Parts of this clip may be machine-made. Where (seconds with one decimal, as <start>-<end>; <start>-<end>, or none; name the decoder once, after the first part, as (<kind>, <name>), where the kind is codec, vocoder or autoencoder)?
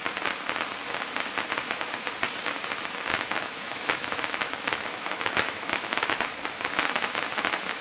3.1-7.8 (autoencoder, DAC-VAE)